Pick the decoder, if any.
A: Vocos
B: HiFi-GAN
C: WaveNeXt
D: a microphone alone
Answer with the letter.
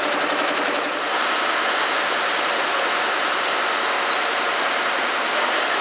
D